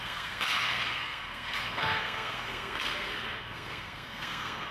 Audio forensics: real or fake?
fake